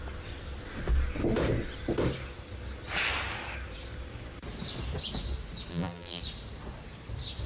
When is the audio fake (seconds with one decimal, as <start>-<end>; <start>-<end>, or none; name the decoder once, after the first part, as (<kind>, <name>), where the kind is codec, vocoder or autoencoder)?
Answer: 5.7-6.2 (vocoder, BigVGAN v2)